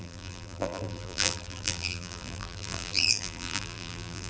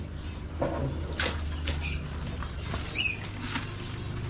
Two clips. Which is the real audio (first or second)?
second